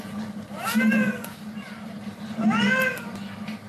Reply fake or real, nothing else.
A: real